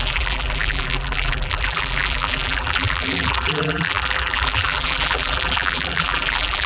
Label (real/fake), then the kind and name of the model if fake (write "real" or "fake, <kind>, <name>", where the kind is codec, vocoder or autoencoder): fake, vocoder, BigVGAN v2